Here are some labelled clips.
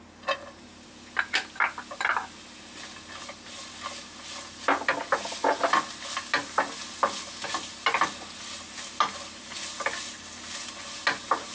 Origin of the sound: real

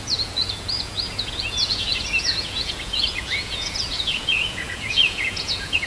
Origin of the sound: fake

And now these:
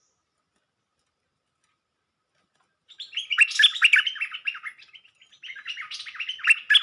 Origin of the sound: real